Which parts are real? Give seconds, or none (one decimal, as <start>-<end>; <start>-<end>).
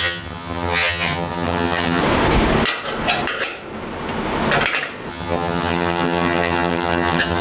2.0-5.1